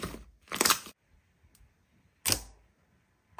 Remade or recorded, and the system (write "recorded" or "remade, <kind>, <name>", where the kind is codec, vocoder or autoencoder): recorded